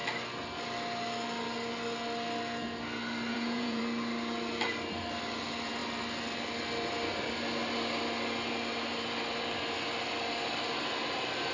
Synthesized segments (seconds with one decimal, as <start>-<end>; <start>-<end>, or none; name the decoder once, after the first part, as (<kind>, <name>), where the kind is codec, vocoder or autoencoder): 3.3-3.8 (vocoder, Vocos)